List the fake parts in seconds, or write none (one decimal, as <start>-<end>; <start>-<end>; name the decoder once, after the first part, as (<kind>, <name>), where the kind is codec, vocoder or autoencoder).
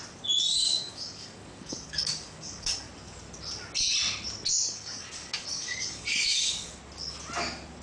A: 0.5-2.9 (codec, DAC); 4.5-6.8